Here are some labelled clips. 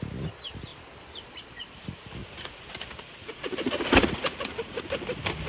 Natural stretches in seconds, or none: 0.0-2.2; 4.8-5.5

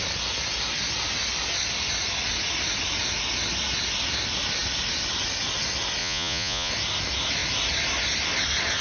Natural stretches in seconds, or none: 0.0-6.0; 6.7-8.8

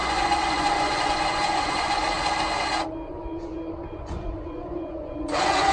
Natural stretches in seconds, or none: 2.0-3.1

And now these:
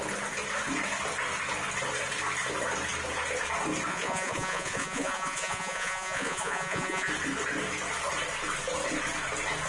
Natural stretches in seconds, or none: 0.0-3.9; 7.1-9.7